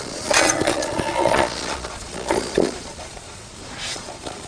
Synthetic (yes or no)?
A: yes